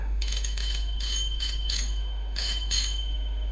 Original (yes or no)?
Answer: no